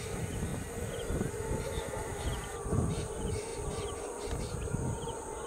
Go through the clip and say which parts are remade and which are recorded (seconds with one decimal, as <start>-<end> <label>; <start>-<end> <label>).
0.0-3.5 remade; 3.5-5.5 recorded